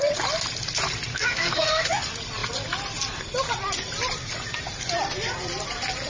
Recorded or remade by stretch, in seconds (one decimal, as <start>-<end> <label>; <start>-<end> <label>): 0.0-1.1 recorded; 1.1-2.0 remade; 2.0-6.1 recorded

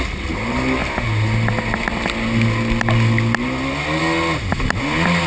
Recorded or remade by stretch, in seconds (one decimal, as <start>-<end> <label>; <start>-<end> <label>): 0.0-5.3 recorded

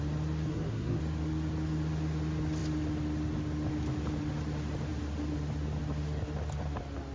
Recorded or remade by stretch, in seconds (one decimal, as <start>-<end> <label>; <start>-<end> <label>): 0.0-0.5 recorded; 0.5-1.0 remade; 1.0-7.1 recorded

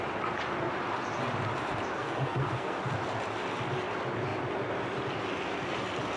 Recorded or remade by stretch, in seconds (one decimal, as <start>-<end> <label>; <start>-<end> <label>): 0.0-1.9 recorded; 1.9-2.8 remade; 2.8-6.2 recorded

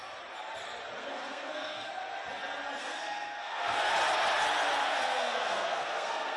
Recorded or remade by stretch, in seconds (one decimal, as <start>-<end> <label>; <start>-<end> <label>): 0.0-1.0 recorded; 1.0-1.9 remade; 1.9-2.8 recorded; 2.8-3.9 remade; 3.9-4.8 recorded; 4.8-6.4 remade

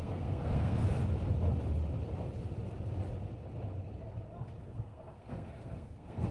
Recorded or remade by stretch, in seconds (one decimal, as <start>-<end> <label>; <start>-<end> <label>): 0.0-0.8 remade; 0.8-4.6 recorded; 4.6-6.3 remade